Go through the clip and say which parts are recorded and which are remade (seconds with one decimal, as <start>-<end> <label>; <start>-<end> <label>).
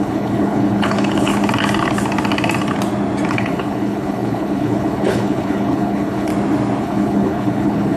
0.0-1.3 remade; 1.3-3.3 recorded; 3.3-6.3 remade; 6.3-6.8 recorded; 6.8-8.0 remade